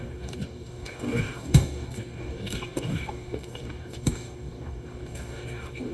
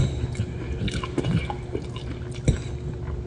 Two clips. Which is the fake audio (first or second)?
first